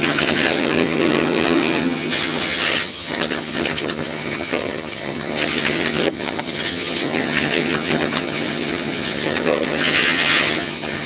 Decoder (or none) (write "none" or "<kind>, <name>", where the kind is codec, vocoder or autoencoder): vocoder, HiFi-GAN